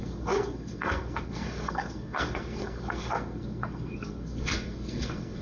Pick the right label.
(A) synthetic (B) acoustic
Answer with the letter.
A